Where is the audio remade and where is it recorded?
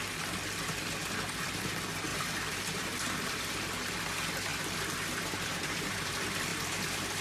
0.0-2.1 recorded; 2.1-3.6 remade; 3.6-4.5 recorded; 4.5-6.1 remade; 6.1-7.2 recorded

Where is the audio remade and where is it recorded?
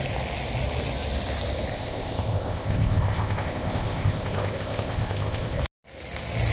0.0-1.7 recorded; 1.7-5.6 remade; 5.6-6.5 recorded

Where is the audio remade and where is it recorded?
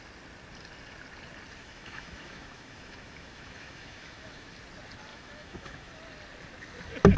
0.0-1.6 recorded; 1.6-4.5 remade; 4.5-5.1 recorded; 5.1-5.9 remade; 5.9-7.2 recorded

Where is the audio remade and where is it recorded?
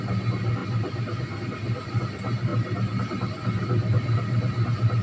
0.0-5.0 recorded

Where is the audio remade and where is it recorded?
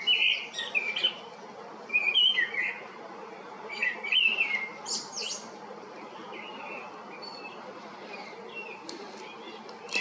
0.0-10.0 recorded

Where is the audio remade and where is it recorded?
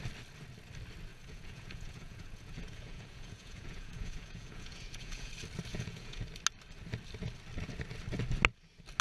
0.0-1.1 recorded; 1.1-5.3 remade; 5.3-5.7 recorded; 5.7-6.2 remade; 6.2-9.0 recorded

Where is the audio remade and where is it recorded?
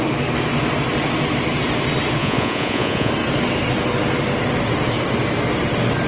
0.0-2.2 recorded; 2.2-3.1 remade; 3.1-6.1 recorded